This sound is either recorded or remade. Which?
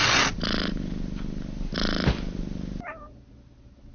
recorded